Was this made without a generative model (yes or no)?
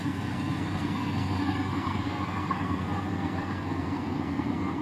no